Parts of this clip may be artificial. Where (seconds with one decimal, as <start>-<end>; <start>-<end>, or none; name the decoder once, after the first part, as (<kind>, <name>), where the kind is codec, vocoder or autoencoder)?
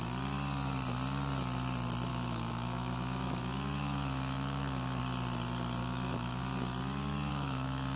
2.1-5.0 (autoencoder, DAC-VAE); 5.8-6.4; 7.3-8.0